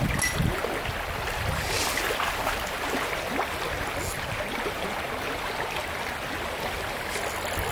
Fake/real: real